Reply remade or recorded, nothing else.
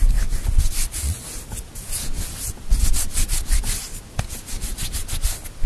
recorded